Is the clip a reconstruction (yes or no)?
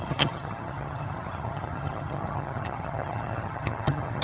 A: yes